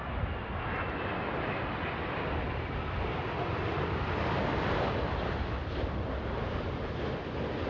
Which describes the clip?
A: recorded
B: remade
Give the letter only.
A